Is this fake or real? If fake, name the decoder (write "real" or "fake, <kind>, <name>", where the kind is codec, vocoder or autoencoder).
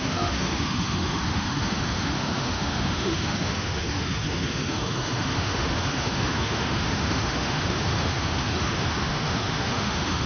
fake, autoencoder, DAC-VAE